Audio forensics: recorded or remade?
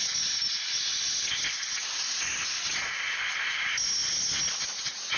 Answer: recorded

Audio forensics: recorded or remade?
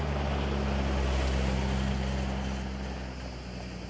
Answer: recorded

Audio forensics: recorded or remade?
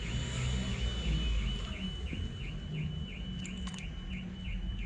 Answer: recorded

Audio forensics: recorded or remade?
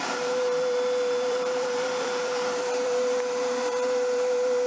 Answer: remade